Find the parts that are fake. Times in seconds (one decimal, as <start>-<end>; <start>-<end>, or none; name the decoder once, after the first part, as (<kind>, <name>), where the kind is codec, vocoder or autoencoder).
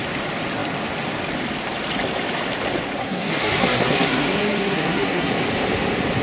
3.0-5.3 (codec, SNAC)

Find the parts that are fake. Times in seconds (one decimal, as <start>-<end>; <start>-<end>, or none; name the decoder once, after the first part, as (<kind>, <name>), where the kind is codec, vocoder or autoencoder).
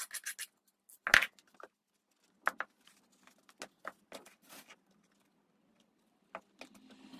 none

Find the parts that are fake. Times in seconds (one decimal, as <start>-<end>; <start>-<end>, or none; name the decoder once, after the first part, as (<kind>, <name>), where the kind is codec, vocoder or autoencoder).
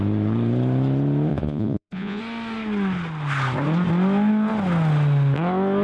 1.3-2.2 (vocoder, Vocos)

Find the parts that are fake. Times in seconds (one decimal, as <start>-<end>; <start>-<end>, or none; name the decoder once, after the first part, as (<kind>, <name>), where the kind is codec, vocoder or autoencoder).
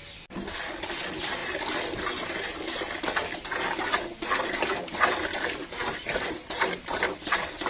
5.3-7.3 (vocoder, BigVGAN v2)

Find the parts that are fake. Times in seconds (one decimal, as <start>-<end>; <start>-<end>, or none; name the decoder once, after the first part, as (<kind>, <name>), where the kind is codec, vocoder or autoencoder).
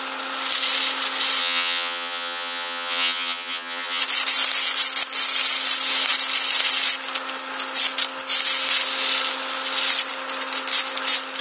1.4-4.0 (vocoder, HiFi-GAN)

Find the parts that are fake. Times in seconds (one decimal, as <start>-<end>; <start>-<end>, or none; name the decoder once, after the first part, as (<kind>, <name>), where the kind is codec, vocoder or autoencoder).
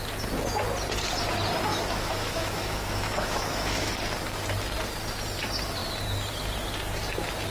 1.7-3.9 (autoencoder, DAC-VAE)